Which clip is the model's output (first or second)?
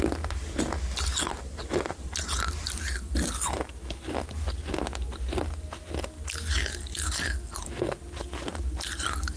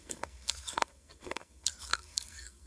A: second